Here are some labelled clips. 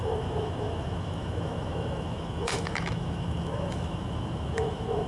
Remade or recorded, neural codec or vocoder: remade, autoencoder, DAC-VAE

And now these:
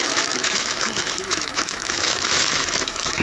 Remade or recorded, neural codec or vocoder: remade, autoencoder, DAC-VAE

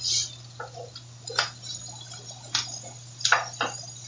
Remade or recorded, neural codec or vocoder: recorded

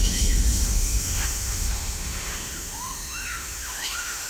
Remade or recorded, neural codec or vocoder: remade, autoencoder, DAC-VAE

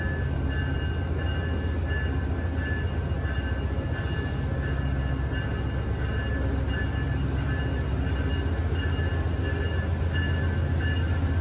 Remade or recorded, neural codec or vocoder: recorded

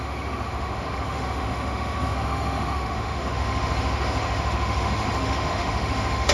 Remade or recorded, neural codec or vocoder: remade, autoencoder, DAC-VAE